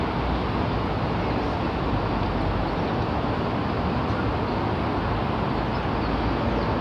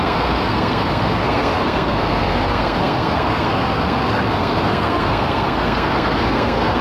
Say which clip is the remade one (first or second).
second